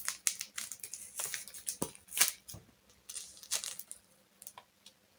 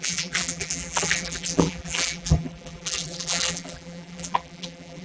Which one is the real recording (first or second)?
first